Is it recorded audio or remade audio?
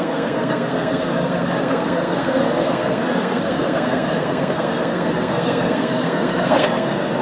remade